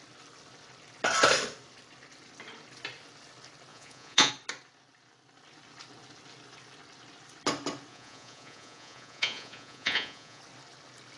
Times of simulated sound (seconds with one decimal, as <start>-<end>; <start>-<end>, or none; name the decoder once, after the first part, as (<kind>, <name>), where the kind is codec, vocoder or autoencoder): 3.7-4.3 (vocoder, Vocos); 7.9-10.4